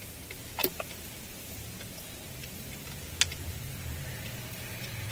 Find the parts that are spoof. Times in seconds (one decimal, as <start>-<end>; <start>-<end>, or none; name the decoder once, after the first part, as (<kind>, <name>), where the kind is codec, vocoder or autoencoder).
0.6-1.7 (vocoder, BigVGAN v2); 2.4-5.1